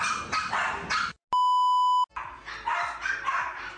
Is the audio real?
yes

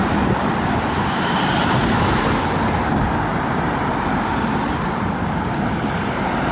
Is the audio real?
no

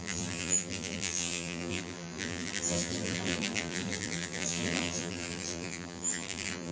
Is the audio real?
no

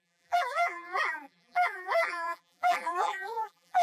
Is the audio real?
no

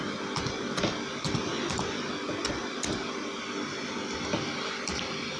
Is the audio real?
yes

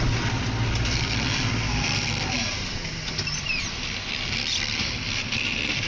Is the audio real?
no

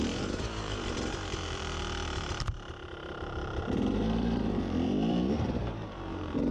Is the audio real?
no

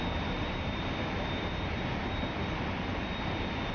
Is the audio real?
no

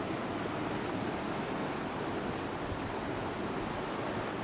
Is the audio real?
yes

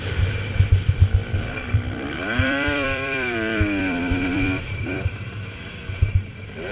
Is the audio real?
no